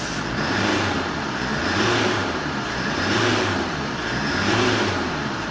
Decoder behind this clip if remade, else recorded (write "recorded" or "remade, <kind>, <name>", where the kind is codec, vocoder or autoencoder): remade, vocoder, BigVGAN v2